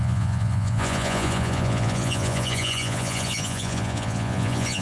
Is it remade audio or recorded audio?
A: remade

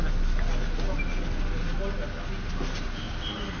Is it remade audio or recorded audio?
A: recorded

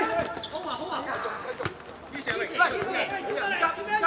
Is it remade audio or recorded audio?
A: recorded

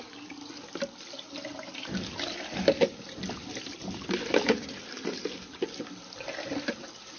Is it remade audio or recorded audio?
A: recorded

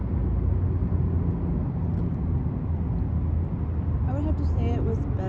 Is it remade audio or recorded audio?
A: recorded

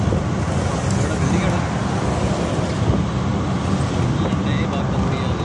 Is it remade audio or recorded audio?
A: recorded